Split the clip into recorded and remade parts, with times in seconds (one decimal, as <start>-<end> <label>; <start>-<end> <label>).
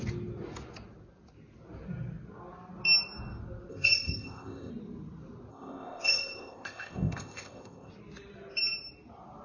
0.0-3.7 recorded; 3.7-4.7 remade; 4.7-5.5 recorded; 5.5-7.9 remade; 7.9-9.4 recorded